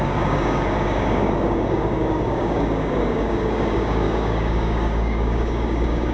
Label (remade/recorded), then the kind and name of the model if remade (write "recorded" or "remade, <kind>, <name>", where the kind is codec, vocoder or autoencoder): remade, codec, DAC